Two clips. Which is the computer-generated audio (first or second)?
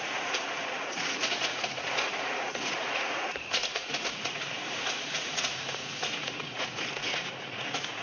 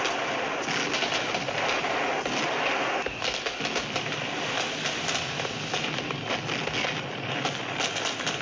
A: first